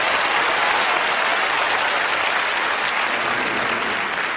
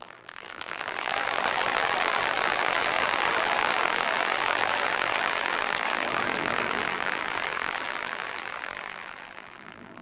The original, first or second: first